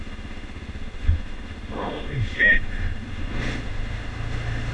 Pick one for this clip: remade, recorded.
remade